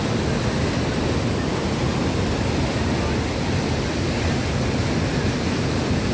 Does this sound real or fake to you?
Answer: real